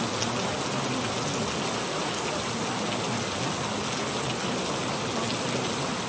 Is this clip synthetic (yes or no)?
no